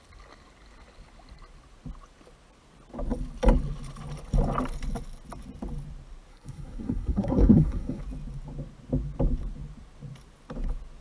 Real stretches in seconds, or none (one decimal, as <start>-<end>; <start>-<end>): 0.0-6.3; 8.0-11.0